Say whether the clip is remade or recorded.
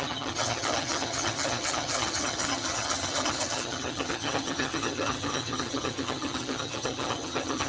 remade